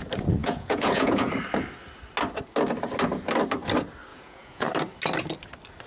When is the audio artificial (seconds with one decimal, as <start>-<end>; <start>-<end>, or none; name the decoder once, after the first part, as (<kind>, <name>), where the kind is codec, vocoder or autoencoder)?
0.4-1.3 (vocoder, Vocos); 4.1-4.7